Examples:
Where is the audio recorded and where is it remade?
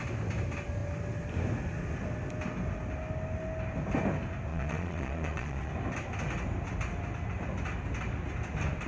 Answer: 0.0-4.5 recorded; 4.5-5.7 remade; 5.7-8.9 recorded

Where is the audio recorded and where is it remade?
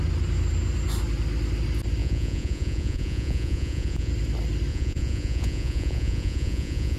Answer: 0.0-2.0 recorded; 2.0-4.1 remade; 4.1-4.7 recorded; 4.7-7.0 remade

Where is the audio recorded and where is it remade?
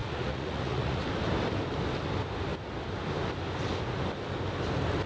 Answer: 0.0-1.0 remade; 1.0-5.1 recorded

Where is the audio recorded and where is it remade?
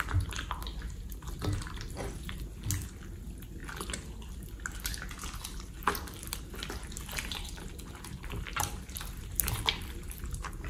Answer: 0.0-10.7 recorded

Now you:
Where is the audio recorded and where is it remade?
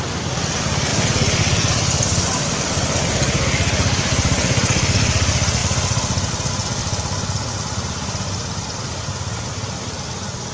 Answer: 0.0-10.5 recorded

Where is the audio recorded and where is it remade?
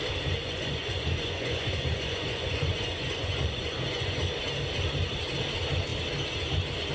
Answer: 0.0-0.4 recorded; 0.4-4.2 remade; 4.2-6.9 recorded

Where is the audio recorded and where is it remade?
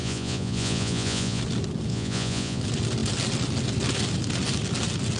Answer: 0.0-1.4 remade; 1.4-1.9 recorded; 1.9-2.6 remade; 2.6-5.2 recorded